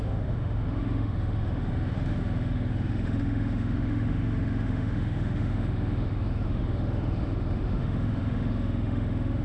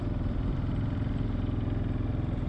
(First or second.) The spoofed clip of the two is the first